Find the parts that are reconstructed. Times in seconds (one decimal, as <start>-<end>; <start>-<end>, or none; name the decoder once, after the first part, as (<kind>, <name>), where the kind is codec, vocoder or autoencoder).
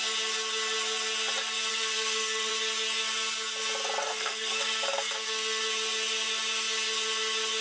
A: 1.7-2.5 (codec, SNAC); 4.0-5.6